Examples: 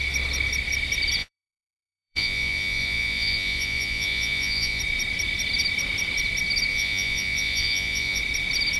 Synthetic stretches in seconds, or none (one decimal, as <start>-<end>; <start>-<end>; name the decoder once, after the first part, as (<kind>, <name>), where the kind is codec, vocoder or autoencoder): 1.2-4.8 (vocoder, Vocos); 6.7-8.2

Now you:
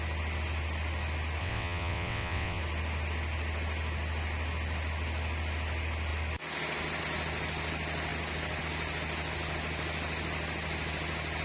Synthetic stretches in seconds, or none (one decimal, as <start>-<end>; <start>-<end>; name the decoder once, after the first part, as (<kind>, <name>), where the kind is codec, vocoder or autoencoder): 1.4-2.6 (vocoder, WaveNeXt)

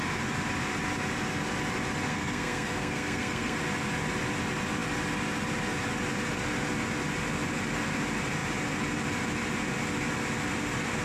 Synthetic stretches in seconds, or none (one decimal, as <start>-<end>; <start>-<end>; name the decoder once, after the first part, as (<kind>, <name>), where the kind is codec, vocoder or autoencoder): 2.1-3.6 (codec, SNAC)

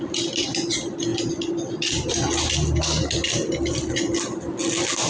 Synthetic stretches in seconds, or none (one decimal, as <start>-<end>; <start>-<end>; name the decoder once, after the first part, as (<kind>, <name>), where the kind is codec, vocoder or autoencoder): none

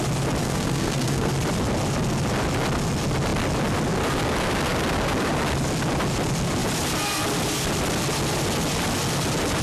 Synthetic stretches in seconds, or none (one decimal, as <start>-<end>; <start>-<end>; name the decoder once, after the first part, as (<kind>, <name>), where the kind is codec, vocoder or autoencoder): 0.4-1.3 (codec, SNAC)

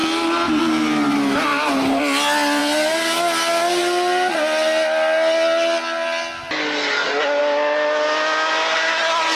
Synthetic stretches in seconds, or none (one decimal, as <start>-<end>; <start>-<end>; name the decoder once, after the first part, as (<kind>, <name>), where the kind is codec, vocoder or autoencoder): none

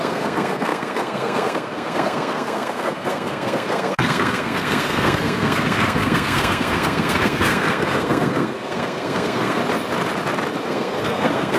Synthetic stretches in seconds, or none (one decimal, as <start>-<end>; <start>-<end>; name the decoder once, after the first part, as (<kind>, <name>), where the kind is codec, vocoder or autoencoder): 0.0-9.6 (codec, SNAC); 10.7-11.6